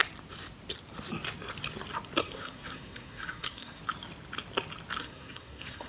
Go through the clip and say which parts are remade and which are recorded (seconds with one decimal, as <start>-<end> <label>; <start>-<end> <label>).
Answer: 0.0-2.2 recorded; 2.2-3.8 remade; 3.8-5.0 recorded; 5.0-5.9 remade